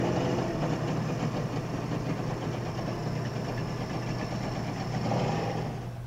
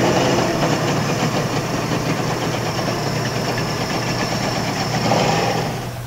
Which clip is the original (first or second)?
first